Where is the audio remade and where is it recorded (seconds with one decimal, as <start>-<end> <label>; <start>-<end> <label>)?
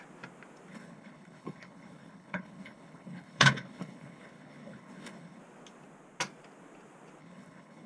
0.0-0.7 recorded; 0.7-5.4 remade; 5.4-7.2 recorded; 7.2-7.9 remade